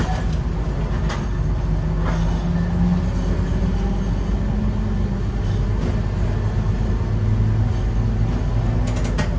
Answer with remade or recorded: recorded